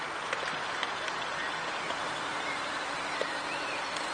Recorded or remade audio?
remade